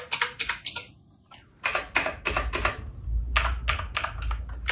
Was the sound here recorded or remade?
recorded